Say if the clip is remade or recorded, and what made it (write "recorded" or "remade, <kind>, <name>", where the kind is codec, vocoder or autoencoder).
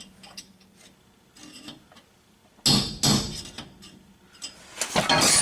recorded